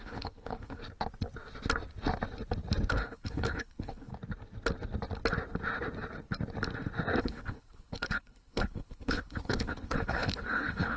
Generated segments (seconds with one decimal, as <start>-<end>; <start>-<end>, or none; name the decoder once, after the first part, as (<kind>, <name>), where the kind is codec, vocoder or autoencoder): 0.0-0.8 (codec, HILCodec); 2.9-4.1; 7.2-11.0